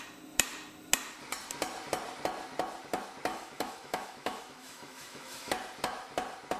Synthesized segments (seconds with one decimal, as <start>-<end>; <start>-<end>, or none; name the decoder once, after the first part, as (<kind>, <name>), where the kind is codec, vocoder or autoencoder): 3.3-5.5 (autoencoder, DAC-VAE)